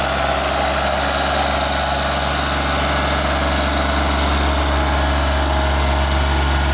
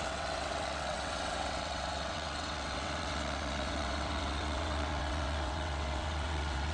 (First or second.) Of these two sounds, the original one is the first